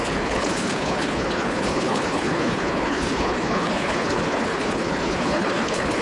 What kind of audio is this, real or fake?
fake